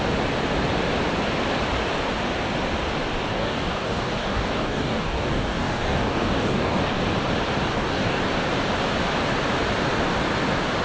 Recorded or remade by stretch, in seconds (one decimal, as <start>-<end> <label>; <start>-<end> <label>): 0.0-3.3 recorded; 3.3-7.0 remade; 7.0-7.7 recorded; 7.7-8.2 remade; 8.2-10.8 recorded